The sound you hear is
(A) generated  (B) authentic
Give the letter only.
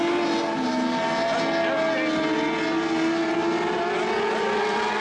B